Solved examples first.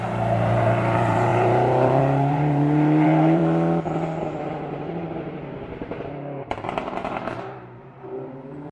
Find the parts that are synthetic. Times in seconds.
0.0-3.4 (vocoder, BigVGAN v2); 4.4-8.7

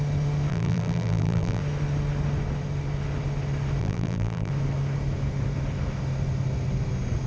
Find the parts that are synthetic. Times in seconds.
0.5-1.6 (vocoder, BigVGAN v2); 3.8-4.5

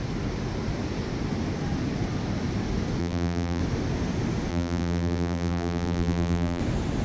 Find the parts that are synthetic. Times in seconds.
3.0-3.6 (vocoder, BigVGAN v2); 4.5-6.6

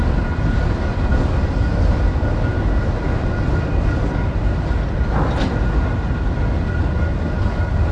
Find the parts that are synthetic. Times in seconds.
none

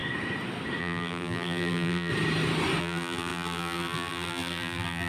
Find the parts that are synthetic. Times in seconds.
0.8-2.1 (vocoder, BigVGAN v2); 2.8-5.1

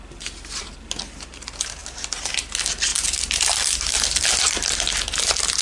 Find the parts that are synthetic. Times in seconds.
1.8-2.3 (vocoder, BigVGAN v2); 2.9-4.9

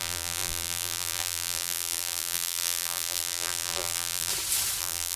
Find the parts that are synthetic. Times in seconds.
0.0-4.3 (vocoder, BigVGAN v2); 4.8-5.2